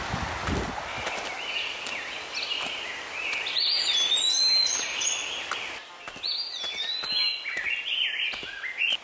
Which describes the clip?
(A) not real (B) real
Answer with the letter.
B